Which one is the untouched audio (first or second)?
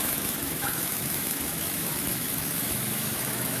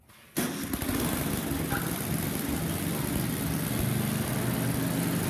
second